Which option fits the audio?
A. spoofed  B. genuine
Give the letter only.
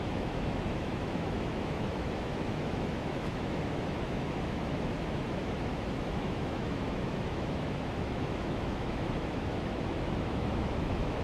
A